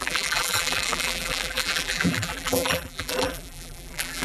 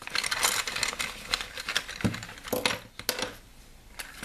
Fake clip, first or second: first